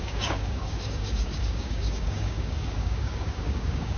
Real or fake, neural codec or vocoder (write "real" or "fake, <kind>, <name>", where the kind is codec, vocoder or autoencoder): fake, codec, DAC